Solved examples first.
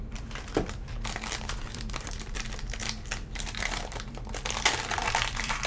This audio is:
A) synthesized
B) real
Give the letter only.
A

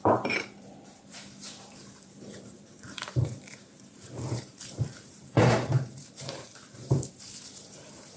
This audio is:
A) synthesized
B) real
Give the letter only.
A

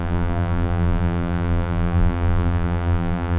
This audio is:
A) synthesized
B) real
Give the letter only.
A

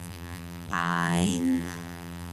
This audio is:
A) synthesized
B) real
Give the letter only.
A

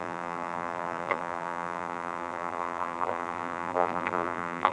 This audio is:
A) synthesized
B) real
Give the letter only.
A